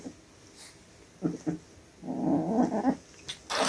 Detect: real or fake real